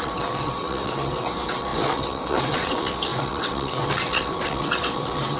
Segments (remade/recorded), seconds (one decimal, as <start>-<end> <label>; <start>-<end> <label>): 0.0-5.4 remade